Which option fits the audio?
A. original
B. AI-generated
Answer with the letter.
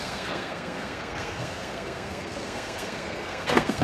B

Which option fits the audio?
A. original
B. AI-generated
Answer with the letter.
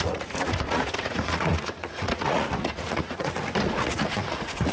B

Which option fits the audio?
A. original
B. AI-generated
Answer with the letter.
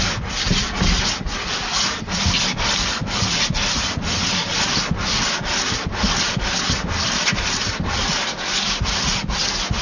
A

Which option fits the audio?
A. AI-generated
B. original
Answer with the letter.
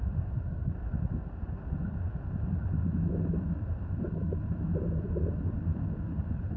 A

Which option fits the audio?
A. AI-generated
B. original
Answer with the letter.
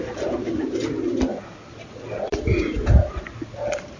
B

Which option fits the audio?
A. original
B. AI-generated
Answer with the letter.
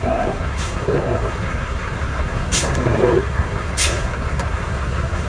B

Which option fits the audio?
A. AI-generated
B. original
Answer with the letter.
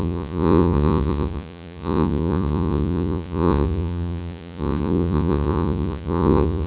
A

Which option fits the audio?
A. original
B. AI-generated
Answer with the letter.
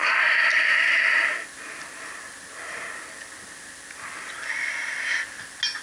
A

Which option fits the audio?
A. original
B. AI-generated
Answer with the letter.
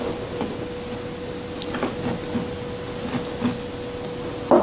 A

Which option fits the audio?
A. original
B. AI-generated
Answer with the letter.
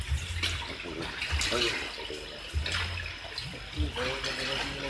A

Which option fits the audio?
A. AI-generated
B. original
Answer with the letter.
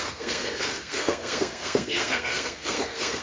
A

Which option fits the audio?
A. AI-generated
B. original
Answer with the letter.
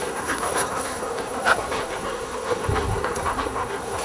A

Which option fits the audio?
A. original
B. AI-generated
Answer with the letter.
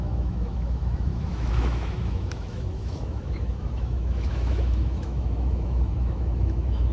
B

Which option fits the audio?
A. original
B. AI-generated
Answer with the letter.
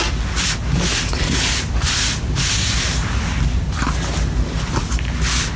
A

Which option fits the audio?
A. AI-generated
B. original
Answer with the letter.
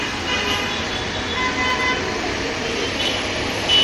B